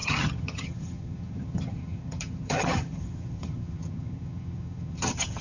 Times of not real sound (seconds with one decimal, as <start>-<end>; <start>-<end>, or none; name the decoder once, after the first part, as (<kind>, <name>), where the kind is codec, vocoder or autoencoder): 0.0-5.4 (vocoder, HiFi-GAN)